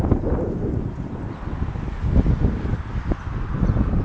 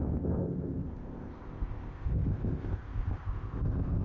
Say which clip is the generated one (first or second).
second